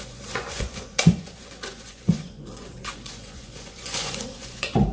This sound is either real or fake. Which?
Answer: fake